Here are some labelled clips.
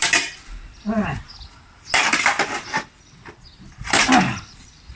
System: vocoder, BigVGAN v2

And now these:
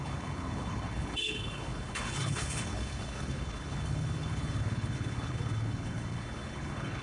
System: codec, HILCodec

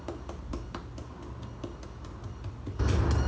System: none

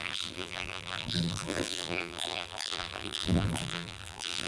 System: vocoder, BigVGAN v2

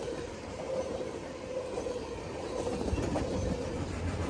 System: vocoder, BigVGAN v2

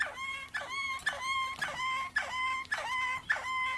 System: none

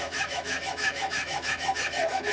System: autoencoder, DAC-VAE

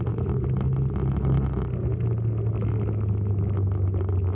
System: none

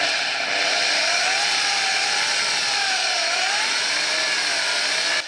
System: none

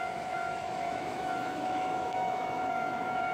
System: autoencoder, DAC-VAE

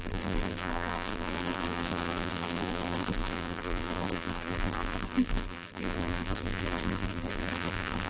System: vocoder, BigVGAN v2